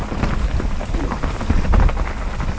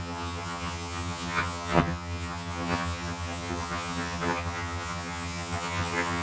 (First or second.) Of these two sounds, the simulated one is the second